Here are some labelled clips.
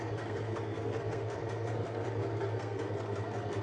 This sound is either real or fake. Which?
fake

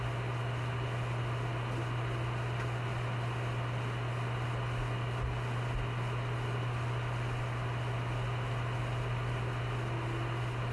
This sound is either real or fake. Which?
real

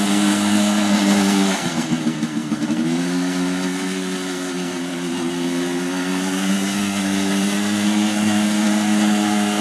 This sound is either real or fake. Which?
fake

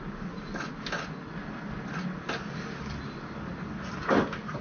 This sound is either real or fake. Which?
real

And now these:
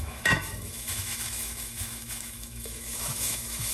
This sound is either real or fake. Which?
fake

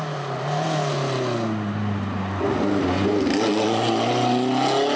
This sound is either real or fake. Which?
real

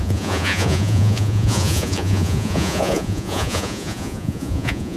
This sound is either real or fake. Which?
fake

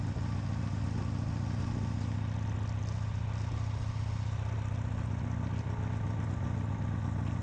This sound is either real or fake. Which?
real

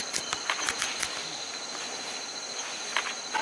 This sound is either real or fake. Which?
real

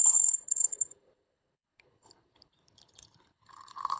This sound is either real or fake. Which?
fake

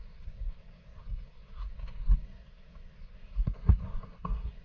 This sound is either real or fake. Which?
fake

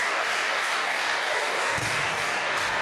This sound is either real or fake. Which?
fake